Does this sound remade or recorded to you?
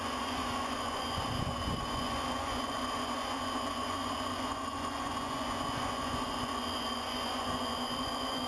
remade